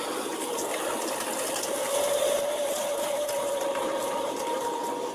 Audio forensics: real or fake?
real